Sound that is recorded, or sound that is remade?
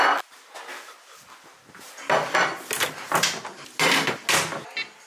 recorded